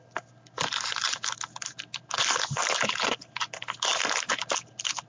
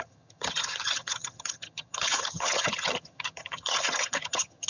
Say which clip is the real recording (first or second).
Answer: first